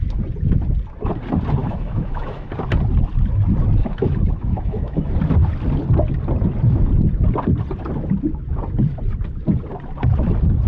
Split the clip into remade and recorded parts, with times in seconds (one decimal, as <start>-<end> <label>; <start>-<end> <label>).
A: 0.0-1.6 recorded; 1.6-2.5 remade; 2.5-3.8 recorded; 3.8-5.1 remade; 5.1-10.7 recorded